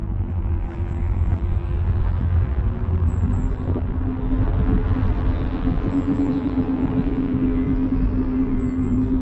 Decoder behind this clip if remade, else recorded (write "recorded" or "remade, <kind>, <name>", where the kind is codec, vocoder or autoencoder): remade, vocoder, BigVGAN v2